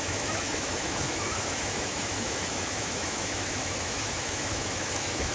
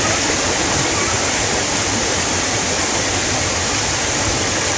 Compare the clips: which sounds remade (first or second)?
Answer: first